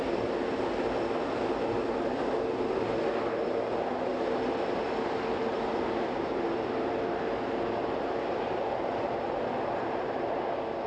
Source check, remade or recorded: recorded